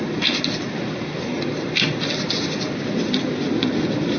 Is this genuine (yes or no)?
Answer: yes